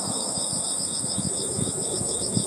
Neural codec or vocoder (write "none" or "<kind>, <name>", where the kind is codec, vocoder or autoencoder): autoencoder, DAC-VAE